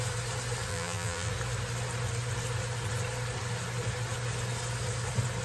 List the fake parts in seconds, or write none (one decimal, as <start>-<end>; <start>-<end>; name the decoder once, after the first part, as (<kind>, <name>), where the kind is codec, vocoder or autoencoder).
0.7-1.3 (vocoder, BigVGAN v2)